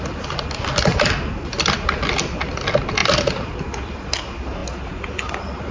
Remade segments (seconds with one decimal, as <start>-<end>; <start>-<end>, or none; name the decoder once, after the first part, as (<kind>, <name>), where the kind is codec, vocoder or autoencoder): none